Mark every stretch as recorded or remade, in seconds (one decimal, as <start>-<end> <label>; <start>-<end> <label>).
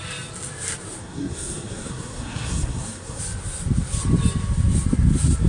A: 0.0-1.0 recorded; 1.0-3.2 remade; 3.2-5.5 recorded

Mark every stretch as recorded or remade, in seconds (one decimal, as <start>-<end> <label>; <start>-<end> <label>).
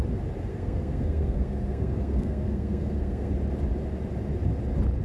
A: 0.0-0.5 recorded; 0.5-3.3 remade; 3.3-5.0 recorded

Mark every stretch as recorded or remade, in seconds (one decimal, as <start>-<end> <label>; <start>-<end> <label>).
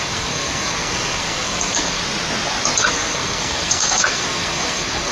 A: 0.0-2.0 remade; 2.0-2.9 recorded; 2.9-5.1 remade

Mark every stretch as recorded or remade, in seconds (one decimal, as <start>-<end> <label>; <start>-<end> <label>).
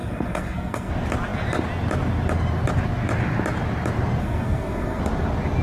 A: 0.0-0.9 remade; 0.9-4.2 recorded; 4.2-5.0 remade; 5.0-5.6 recorded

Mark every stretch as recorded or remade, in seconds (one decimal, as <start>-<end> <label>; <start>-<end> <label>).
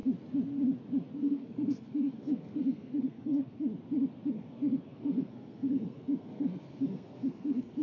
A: 0.0-1.2 recorded; 1.2-3.7 remade; 3.7-4.3 recorded; 4.3-7.8 remade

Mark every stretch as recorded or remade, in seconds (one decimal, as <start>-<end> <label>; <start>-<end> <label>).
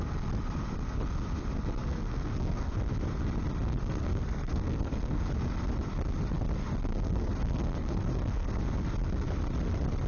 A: 0.0-1.8 recorded; 1.8-2.7 remade; 2.7-3.7 recorded; 3.7-5.2 remade; 5.2-6.9 recorded; 6.9-8.6 remade; 8.6-10.1 recorded